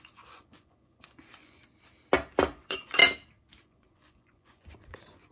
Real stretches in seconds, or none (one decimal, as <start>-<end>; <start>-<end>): 1.6-2.5; 3.0-3.6

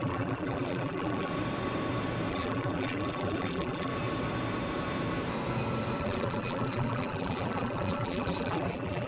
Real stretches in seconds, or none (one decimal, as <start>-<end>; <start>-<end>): 1.3-2.3; 3.9-6.0

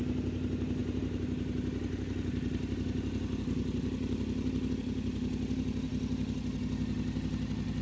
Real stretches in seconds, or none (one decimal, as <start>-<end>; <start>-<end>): 0.0-7.8

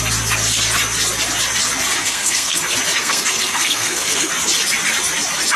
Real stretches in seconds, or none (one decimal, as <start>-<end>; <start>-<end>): 0.0-2.0; 2.6-3.0; 4.3-5.6

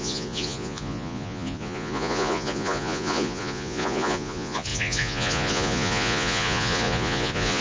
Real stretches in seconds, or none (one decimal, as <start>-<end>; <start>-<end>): none

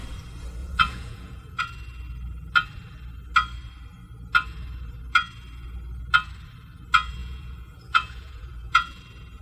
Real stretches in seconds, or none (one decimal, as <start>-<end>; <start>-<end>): 0.0-0.6; 1.6-7.2; 9.0-9.4

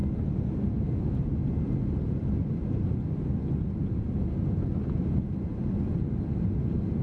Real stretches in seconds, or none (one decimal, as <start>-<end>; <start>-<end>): 0.0-7.0

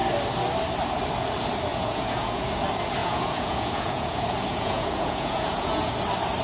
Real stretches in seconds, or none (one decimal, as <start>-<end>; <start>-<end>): 0.0-1.7; 2.4-3.0; 5.9-6.4